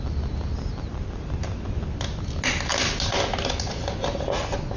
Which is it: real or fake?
real